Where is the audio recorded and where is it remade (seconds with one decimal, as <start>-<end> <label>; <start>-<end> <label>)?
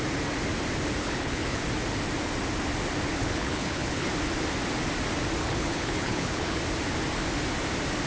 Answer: 0.0-1.0 recorded; 1.0-1.6 remade; 1.6-3.2 recorded; 3.2-4.1 remade; 4.1-5.4 recorded; 5.4-6.6 remade; 6.6-8.1 recorded